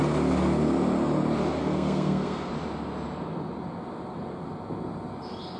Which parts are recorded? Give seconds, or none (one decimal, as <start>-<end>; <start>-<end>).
0.0-1.6; 2.5-5.6